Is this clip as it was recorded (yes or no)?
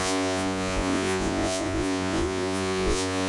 no